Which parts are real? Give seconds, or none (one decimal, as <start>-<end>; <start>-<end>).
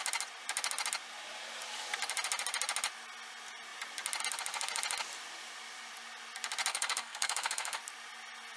0.0-6.7; 7.8-8.6